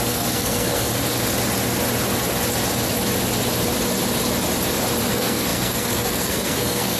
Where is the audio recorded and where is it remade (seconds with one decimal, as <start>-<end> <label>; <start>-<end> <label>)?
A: 0.0-0.9 remade; 0.9-5.1 recorded; 5.1-7.0 remade